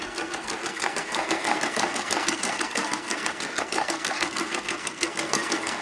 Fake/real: fake